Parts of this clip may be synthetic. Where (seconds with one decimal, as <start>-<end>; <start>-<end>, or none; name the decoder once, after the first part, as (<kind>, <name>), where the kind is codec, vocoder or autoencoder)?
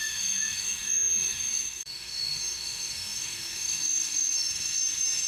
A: 0.0-5.3 (autoencoder, DAC-VAE)